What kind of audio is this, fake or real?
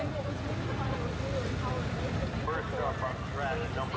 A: real